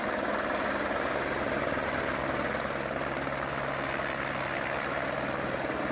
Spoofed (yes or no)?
no